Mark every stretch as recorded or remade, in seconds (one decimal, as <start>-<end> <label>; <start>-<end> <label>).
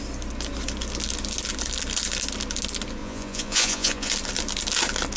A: 0.0-3.0 recorded; 3.0-4.1 remade; 4.1-5.2 recorded